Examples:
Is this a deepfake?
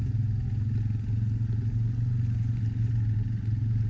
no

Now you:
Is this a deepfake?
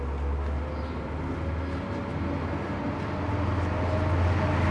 no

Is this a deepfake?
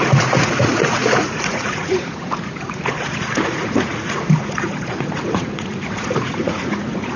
yes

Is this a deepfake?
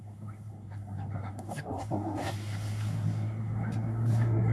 yes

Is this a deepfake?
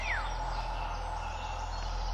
no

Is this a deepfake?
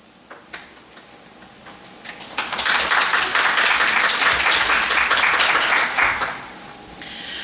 no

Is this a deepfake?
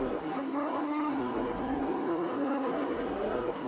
yes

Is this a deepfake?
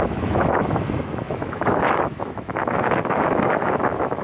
yes